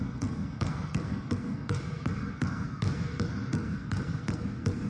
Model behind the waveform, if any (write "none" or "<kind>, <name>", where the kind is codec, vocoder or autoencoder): codec, SNAC